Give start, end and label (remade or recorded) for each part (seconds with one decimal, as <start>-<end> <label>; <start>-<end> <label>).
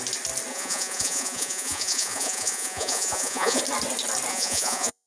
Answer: 0.0-0.5 recorded; 0.5-3.6 remade; 3.6-4.3 recorded; 4.3-5.1 remade